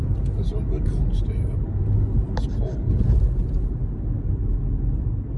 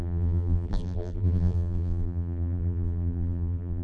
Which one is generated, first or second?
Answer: second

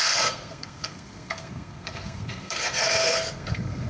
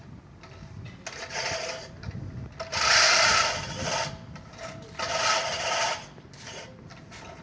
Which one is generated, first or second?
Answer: first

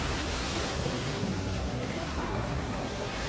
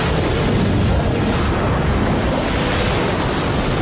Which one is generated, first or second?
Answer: first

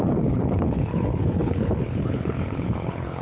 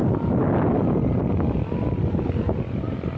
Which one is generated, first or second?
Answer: first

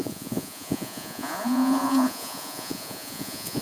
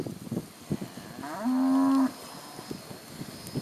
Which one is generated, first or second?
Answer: first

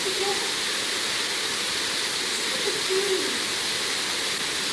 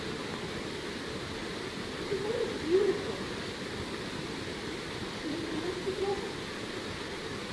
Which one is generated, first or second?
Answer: second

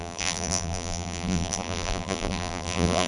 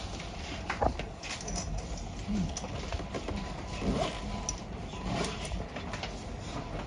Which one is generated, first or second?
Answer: first